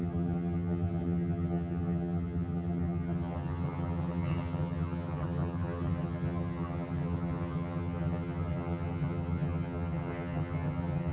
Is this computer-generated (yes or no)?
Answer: yes